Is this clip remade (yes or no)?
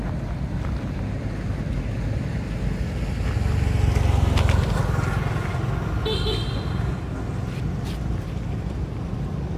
no